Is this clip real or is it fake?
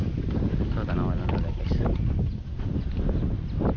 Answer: real